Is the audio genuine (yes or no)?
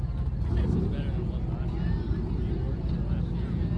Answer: yes